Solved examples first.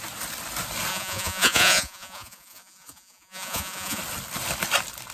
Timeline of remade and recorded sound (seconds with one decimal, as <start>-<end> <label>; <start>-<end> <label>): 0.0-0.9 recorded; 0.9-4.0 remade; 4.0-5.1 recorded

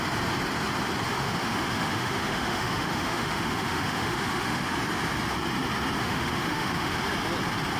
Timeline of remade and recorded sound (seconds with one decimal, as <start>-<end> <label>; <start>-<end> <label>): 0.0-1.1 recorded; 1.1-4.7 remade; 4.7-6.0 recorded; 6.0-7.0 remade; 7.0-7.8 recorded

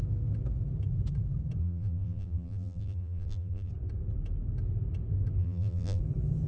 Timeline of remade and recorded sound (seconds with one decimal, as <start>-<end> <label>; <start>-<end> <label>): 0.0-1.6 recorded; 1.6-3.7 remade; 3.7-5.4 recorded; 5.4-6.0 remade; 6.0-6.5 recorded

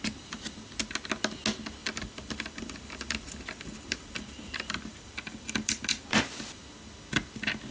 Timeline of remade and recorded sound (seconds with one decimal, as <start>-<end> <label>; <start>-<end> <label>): 0.0-1.8 recorded; 1.8-6.2 remade; 6.2-7.7 recorded